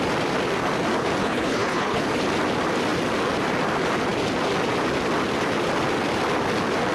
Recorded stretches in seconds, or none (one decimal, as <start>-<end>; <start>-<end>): 0.0-1.2; 2.0-6.9